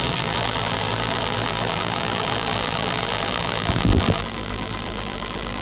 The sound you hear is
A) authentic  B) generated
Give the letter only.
B